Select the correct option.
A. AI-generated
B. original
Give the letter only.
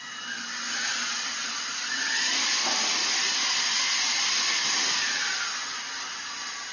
B